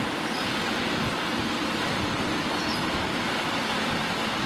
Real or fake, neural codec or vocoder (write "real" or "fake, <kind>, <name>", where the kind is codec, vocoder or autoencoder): real